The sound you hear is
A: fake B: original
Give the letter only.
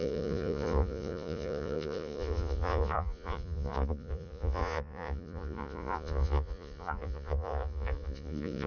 A